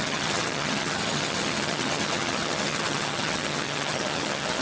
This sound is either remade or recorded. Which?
remade